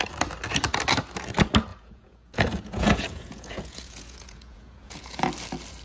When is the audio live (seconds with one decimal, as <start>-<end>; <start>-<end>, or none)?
0.0-1.7; 5.2-5.8